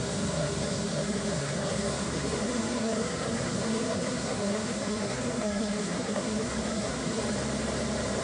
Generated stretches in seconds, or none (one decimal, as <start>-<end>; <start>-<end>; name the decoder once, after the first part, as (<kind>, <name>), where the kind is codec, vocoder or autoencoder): 0.0-7.2 (codec, SNAC)